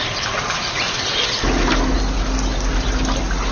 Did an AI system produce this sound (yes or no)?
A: no